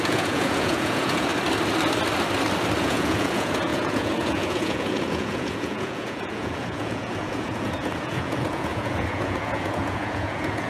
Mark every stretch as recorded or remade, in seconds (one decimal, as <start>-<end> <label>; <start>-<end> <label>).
0.0-1.3 remade; 1.3-2.8 recorded; 2.8-10.7 remade